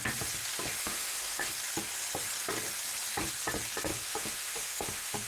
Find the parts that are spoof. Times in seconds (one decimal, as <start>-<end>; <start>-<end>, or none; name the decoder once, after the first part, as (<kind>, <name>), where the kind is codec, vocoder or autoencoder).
0.8-1.5 (autoencoder, DAC-VAE); 3.9-5.3